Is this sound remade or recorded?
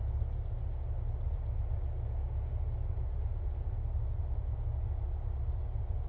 recorded